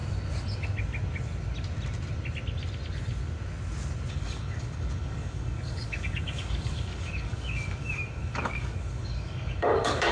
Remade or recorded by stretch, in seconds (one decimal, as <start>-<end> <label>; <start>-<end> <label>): 0.0-4.1 recorded; 4.1-10.1 remade